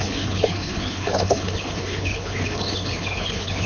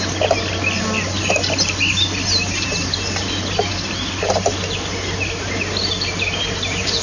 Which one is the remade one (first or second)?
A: first